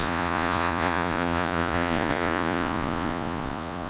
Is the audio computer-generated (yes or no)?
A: yes